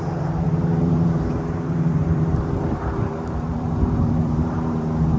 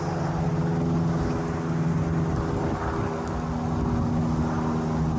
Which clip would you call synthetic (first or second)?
first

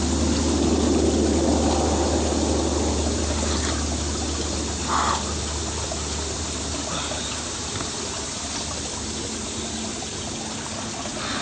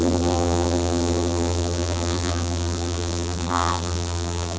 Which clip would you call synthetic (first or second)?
second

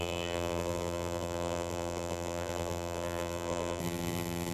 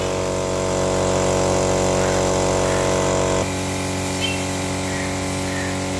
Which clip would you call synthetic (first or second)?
first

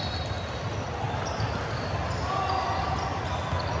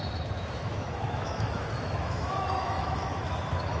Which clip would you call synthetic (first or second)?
second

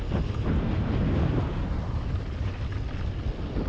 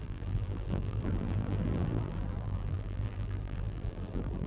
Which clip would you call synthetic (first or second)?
second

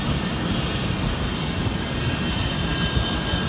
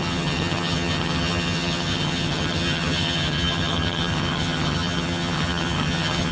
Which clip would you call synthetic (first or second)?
second